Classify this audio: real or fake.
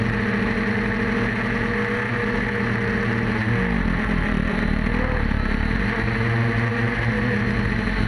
real